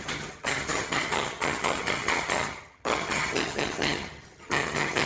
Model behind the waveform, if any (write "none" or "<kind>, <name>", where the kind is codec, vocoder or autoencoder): vocoder, HiFi-GAN